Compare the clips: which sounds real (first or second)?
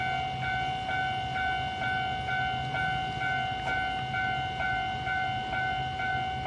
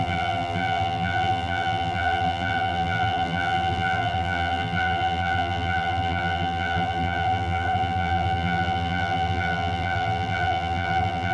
first